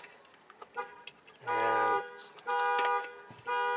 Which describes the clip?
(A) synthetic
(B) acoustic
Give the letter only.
B